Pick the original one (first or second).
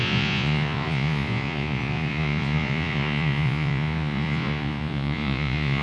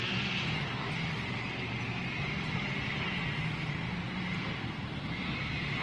second